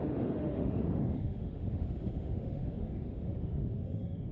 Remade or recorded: remade